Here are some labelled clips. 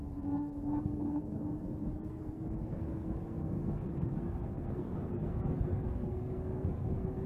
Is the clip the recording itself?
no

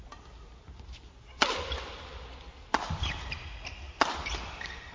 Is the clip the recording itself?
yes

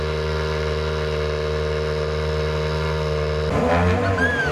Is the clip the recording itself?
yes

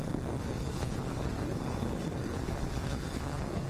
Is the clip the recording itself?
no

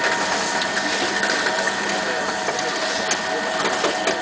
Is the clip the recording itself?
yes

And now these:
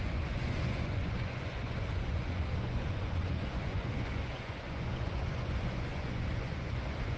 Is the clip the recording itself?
no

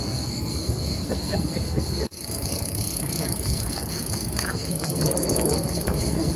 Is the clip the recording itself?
no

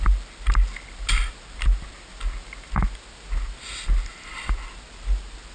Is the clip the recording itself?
yes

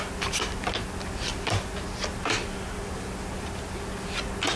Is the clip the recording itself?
yes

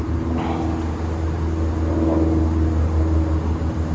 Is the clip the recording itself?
yes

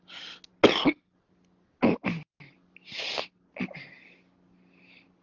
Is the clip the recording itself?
yes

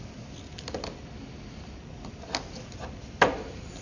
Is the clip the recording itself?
yes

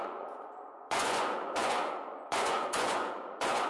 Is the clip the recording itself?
no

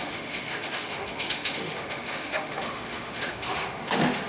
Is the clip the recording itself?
no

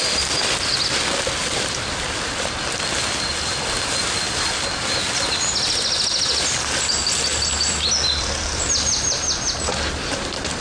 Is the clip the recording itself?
yes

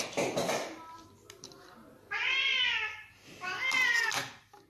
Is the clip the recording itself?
yes